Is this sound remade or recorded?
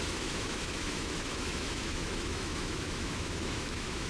remade